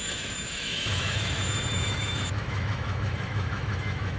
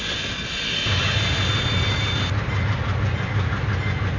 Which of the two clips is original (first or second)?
second